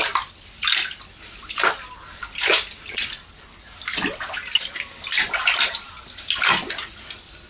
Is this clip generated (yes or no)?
no